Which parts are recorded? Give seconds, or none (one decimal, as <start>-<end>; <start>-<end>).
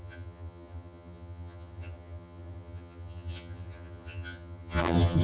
none